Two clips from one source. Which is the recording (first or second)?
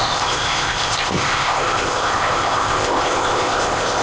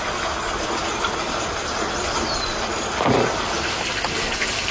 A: second